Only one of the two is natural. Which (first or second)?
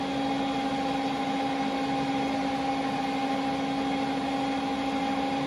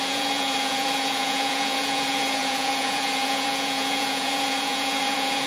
first